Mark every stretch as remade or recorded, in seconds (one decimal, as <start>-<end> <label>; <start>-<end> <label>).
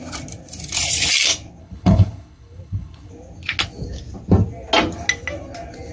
0.0-1.6 recorded; 1.6-3.1 remade; 3.1-5.9 recorded